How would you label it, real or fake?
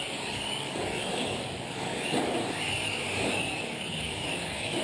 fake